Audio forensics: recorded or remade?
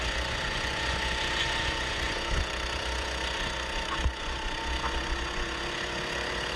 remade